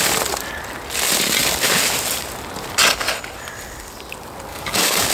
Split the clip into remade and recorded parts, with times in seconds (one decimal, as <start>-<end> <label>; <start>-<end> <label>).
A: 0.0-4.5 recorded; 4.5-5.1 remade